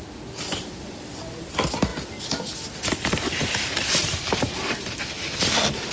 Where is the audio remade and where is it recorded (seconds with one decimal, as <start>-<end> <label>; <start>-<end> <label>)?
0.0-5.9 recorded